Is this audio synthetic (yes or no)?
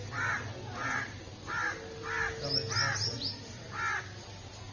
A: no